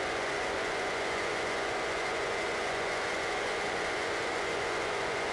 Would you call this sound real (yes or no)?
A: no